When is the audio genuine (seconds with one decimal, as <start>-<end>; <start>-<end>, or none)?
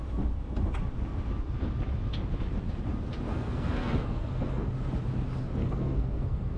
0.0-3.3; 4.7-5.6